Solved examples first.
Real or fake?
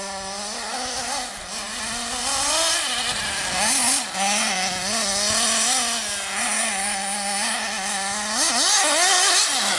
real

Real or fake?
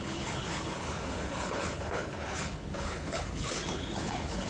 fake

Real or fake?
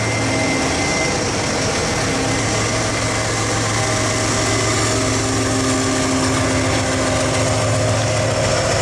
real